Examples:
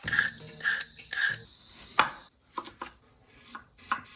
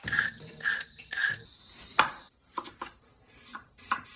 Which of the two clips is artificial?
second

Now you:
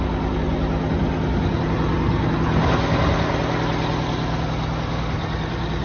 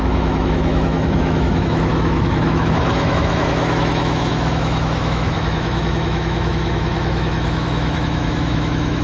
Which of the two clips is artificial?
second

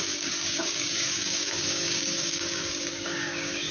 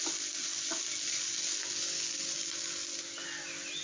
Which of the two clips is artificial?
first